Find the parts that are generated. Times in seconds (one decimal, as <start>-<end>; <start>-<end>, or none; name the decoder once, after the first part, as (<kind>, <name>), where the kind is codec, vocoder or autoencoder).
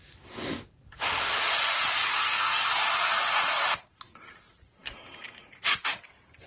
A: 2.2-2.7 (codec, SNAC)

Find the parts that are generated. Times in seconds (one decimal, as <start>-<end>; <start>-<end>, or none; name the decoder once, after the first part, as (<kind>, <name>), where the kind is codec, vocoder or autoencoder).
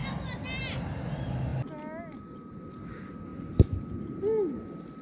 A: none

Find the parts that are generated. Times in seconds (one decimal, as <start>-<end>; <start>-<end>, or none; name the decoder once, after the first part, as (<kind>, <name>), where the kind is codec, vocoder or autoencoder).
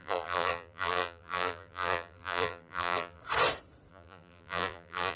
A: 0.0-3.2 (vocoder, BigVGAN v2); 3.9-5.2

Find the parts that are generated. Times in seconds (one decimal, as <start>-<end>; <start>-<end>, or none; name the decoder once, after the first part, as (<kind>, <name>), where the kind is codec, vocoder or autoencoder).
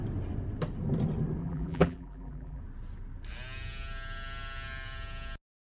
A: 1.4-2.6 (vocoder, BigVGAN v2)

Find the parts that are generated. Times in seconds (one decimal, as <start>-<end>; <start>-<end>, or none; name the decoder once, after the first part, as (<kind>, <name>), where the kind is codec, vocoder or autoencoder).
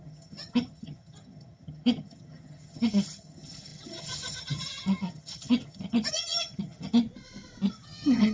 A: 0.0-7.0 (vocoder, HiFi-GAN); 7.7-8.3